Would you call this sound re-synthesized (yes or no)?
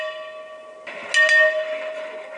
no